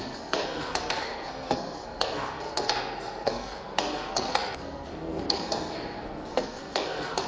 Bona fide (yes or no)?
no